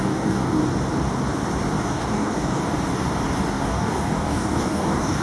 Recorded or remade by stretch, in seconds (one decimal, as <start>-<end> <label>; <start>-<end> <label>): 0.0-0.6 remade; 0.6-1.8 recorded; 1.8-2.6 remade; 2.6-3.5 recorded; 3.5-5.2 remade